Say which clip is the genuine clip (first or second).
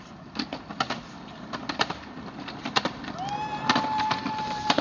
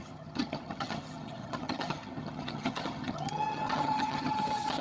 first